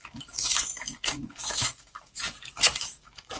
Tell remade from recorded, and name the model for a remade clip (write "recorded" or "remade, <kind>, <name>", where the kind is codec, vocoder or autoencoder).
remade, autoencoder, DAC-VAE